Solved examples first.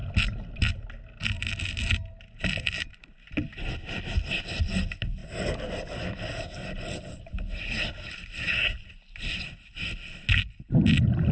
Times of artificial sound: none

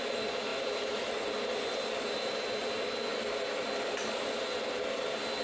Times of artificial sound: none

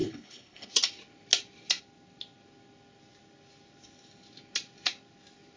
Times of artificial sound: 0.0-0.7 (codec, HILCodec)

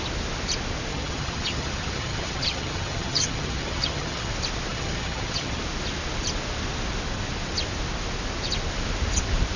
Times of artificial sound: 0.9-4.3 (vocoder, HiFi-GAN); 4.7-5.6

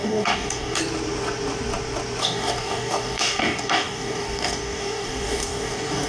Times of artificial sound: 0.0-0.8 (codec, DAC); 2.2-6.1

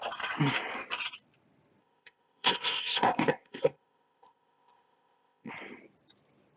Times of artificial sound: 1.8-5.5 (codec, ZipCodec)

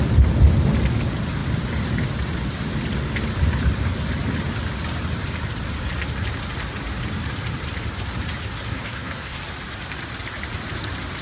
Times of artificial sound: 8.7-9.4 (codec, SNAC)